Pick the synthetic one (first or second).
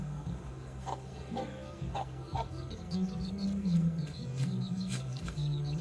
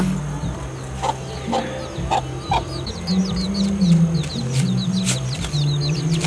first